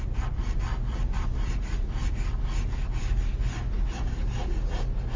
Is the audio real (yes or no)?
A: yes